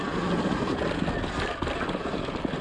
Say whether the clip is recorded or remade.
recorded